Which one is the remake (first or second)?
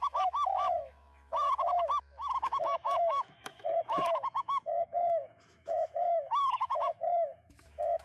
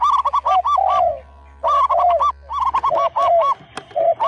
first